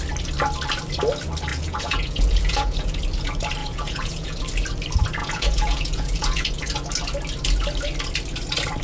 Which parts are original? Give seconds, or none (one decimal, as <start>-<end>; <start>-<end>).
0.0-1.5; 3.0-3.6; 4.4-5.2; 6.7-8.8